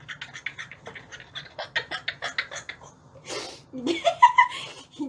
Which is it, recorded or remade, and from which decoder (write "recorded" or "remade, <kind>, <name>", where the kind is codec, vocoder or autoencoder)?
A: recorded